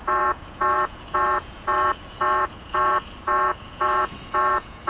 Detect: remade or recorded remade